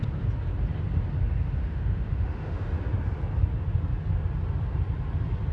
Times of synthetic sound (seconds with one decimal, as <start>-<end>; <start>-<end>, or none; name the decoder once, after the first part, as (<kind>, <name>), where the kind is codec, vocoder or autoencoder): 1.6-2.7 (autoencoder, DAC-VAE)